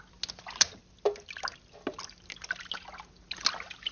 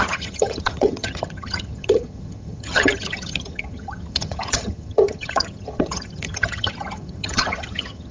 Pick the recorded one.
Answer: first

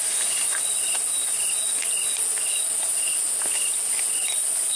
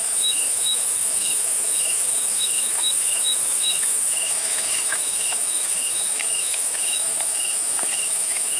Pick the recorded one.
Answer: first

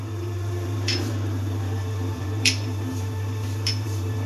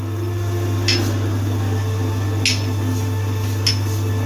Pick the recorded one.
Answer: second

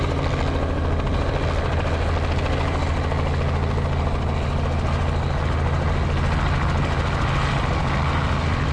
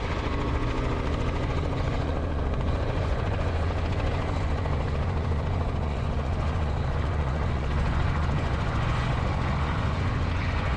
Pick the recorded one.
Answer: first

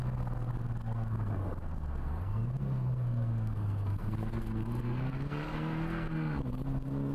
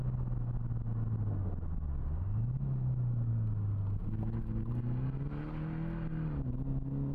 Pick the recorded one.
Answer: second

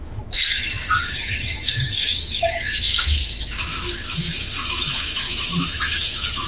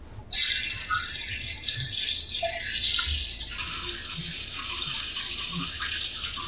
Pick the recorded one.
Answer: second